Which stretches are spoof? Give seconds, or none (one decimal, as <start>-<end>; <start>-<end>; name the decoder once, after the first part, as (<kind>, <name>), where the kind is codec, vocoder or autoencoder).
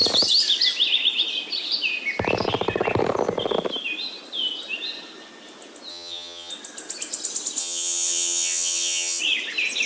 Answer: 5.9-6.5 (vocoder, HiFi-GAN); 7.6-9.2